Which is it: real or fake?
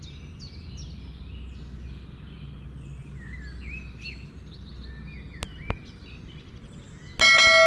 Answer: real